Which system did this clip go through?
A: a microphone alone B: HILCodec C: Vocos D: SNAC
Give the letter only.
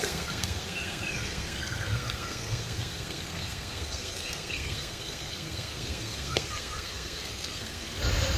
D